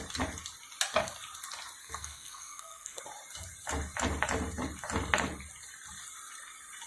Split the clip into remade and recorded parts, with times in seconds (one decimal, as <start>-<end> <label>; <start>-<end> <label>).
0.0-1.8 recorded; 1.8-3.0 remade; 3.0-6.9 recorded